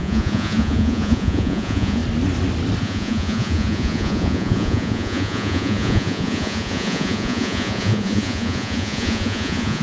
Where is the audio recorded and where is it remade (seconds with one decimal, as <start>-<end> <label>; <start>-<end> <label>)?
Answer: 0.0-2.0 remade; 2.0-2.8 recorded; 2.8-9.8 remade